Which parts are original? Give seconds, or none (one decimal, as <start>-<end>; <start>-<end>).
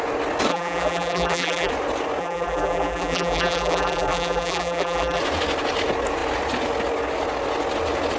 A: 0.0-0.5; 1.7-2.2; 5.2-8.2